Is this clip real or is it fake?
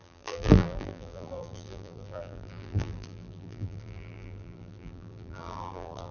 fake